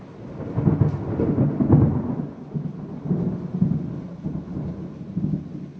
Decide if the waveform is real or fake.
real